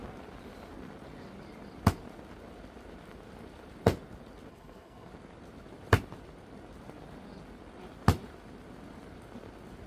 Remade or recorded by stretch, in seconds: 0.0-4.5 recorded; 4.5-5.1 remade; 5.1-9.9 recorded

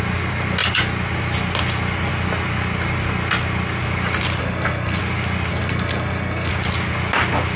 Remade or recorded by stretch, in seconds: 0.0-4.4 recorded; 4.4-5.0 remade; 5.0-5.5 recorded; 5.5-6.5 remade; 6.5-7.6 recorded

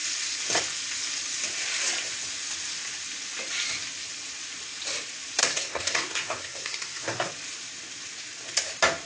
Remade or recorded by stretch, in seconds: 0.0-5.4 recorded; 5.4-7.3 remade; 7.3-9.1 recorded

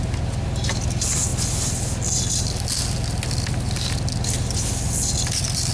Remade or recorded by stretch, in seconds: 0.0-5.7 recorded